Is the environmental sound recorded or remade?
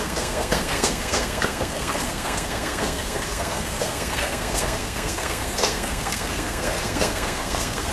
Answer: remade